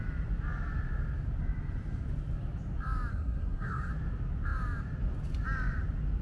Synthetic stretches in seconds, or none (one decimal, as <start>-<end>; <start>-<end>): 3.1-3.9